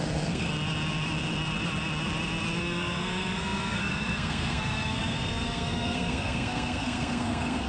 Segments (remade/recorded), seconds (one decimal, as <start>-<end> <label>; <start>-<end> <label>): 0.0-0.5 remade; 0.5-2.6 recorded; 2.6-7.7 remade